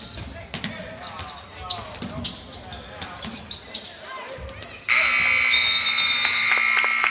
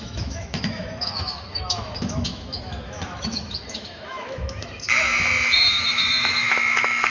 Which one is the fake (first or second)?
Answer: second